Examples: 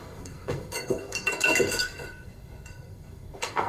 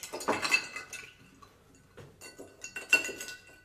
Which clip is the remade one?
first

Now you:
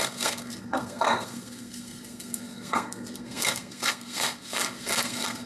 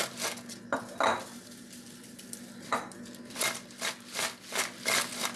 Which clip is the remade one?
first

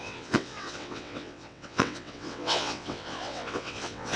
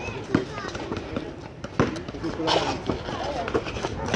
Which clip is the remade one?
first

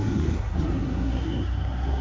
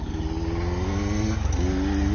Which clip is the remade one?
first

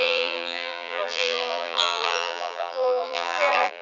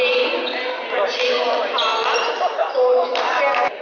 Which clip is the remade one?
first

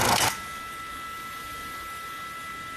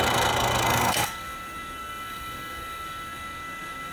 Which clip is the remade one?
second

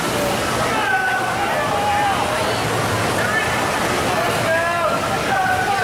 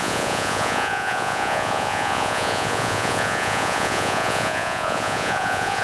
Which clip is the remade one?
second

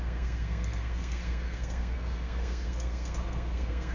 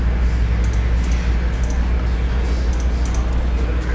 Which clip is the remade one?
first